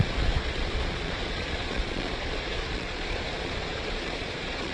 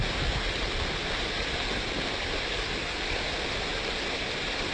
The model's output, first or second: first